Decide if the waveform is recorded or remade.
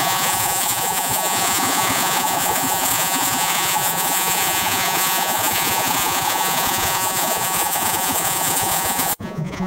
remade